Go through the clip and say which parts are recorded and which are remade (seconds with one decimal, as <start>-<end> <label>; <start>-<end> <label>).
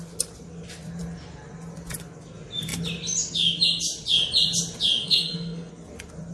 0.0-5.0 recorded; 5.0-5.7 remade; 5.7-6.3 recorded